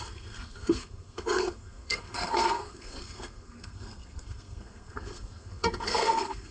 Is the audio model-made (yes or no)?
yes